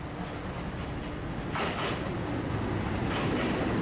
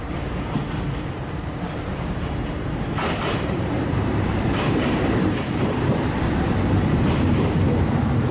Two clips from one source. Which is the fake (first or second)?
second